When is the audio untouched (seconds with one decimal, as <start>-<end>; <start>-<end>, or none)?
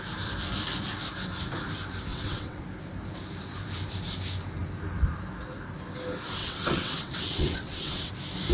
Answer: 0.0-2.1; 2.6-6.4; 8.1-8.5